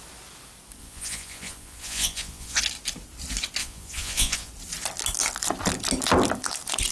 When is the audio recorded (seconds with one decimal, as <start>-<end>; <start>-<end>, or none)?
0.0-0.8; 2.6-3.6; 4.5-6.9